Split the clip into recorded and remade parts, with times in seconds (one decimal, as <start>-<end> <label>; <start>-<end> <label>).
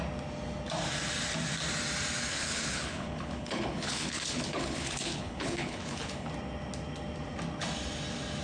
0.0-2.3 recorded; 2.3-6.3 remade; 6.3-8.4 recorded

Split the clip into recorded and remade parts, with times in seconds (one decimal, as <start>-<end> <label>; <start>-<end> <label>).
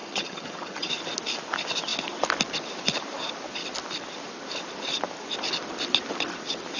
0.0-0.9 remade; 0.9-6.8 recorded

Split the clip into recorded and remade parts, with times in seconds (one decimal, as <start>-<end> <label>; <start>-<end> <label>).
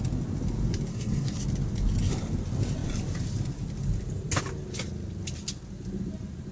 0.0-0.9 recorded; 0.9-1.4 remade; 1.4-6.5 recorded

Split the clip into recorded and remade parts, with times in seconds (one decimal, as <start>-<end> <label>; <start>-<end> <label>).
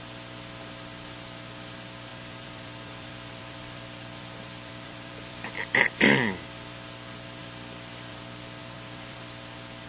0.0-2.1 recorded; 2.1-5.4 remade; 5.4-7.4 recorded; 7.4-8.1 remade; 8.1-8.6 recorded; 8.6-9.2 remade; 9.2-9.9 recorded